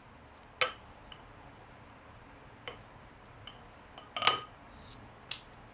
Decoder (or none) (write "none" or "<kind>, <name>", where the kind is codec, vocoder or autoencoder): none